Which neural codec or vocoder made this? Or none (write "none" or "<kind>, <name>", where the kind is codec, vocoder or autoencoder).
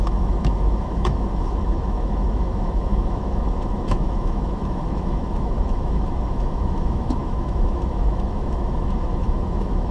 autoencoder, DAC-VAE